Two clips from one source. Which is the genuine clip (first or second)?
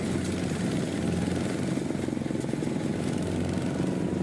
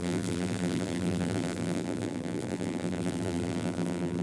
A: first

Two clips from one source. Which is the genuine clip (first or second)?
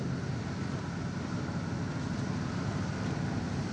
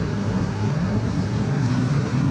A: first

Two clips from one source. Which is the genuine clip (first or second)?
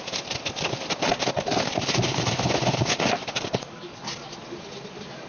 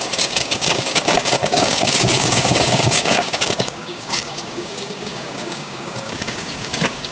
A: first